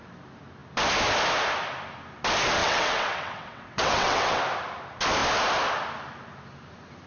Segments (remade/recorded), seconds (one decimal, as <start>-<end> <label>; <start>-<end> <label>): 0.0-2.6 recorded; 2.6-4.4 remade; 4.4-7.1 recorded